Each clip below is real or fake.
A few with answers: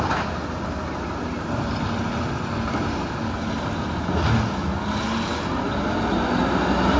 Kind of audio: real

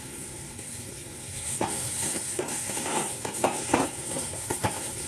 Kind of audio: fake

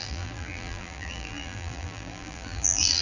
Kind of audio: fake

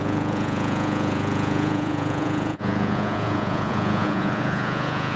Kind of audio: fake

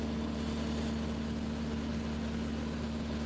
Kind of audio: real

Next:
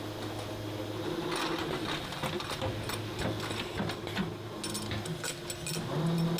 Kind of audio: real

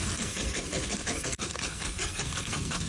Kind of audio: fake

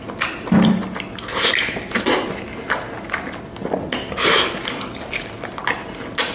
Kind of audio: real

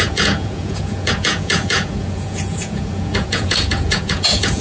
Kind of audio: fake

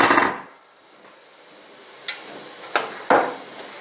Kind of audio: real